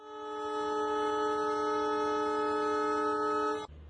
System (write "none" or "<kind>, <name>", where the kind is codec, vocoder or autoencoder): none